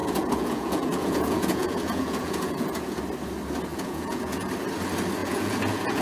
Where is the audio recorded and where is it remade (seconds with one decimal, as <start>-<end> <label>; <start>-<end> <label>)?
0.0-3.0 remade; 3.0-3.7 recorded; 3.7-4.5 remade; 4.5-5.2 recorded; 5.2-6.0 remade